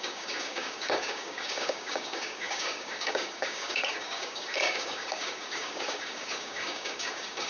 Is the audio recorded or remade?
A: remade